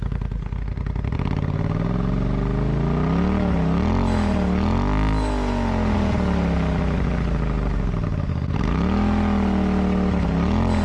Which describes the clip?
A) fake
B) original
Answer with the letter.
B